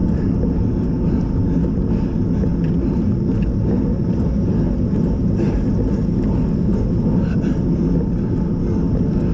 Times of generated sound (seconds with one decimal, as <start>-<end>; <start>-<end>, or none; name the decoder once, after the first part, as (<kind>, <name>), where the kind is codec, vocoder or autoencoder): none